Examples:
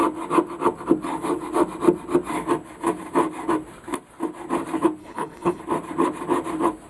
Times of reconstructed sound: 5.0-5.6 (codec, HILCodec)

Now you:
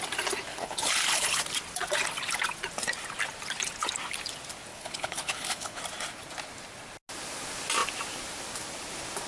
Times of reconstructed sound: 0.5-1.4 (codec, HILCodec); 4.7-5.8